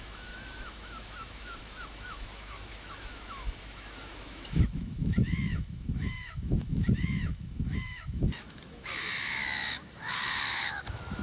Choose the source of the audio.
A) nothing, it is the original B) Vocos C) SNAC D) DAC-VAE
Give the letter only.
D